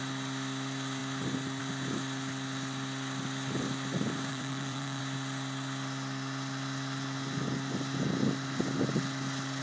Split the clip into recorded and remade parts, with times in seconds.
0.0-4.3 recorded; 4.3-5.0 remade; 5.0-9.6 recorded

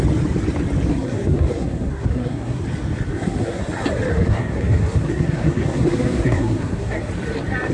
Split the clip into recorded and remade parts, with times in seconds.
0.0-0.9 recorded; 0.9-2.6 remade; 2.6-3.1 recorded; 3.1-3.6 remade; 3.6-4.1 recorded; 4.1-7.1 remade; 7.1-7.7 recorded

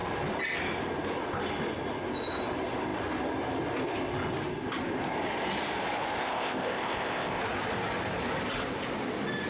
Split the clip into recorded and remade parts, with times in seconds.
0.0-6.2 recorded; 6.2-7.4 remade; 7.4-9.5 recorded

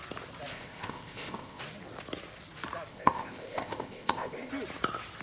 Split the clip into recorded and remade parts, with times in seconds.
0.0-0.5 recorded; 0.5-1.6 remade; 1.6-2.9 recorded; 2.9-4.5 remade; 4.5-5.2 recorded

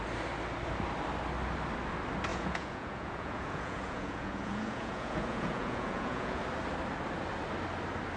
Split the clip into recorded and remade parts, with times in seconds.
0.0-2.3 recorded; 2.3-6.4 remade; 6.4-8.2 recorded

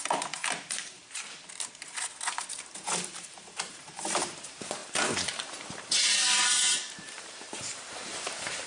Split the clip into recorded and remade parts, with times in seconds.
0.0-1.0 remade; 1.0-2.7 recorded; 2.7-8.7 remade

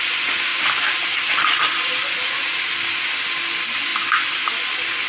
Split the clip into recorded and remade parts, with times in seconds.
0.0-5.1 recorded

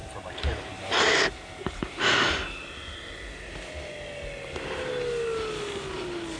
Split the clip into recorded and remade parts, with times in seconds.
0.0-1.8 remade; 1.8-6.4 recorded